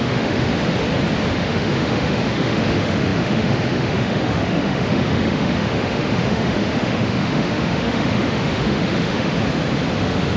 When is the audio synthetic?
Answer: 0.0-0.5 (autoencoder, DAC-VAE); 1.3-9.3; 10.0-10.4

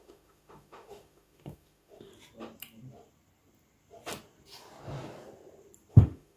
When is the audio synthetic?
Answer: 0.0-2.1 (autoencoder, DAC-VAE); 5.9-6.4